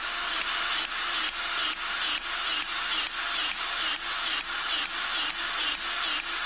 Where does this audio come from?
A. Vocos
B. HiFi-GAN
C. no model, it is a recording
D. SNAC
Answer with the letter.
C